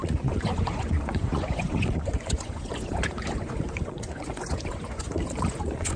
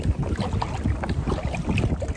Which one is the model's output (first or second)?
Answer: first